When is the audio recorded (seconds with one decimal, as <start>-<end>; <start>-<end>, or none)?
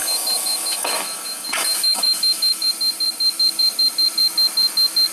2.7-5.1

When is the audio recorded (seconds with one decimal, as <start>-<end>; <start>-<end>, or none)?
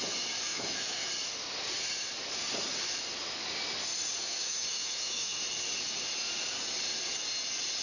0.0-0.5; 1.1-4.2; 5.4-7.8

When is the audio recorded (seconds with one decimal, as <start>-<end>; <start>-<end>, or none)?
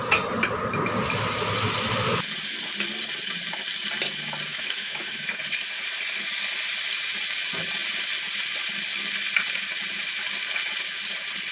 0.0-4.5; 5.4-11.5